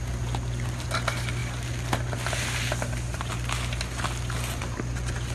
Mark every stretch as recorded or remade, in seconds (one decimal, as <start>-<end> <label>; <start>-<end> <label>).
0.0-5.3 recorded